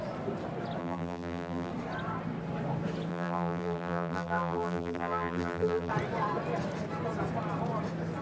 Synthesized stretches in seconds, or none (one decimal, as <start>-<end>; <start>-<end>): 0.8-1.7; 3.1-5.9